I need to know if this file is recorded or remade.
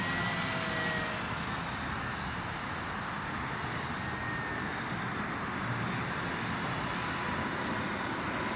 recorded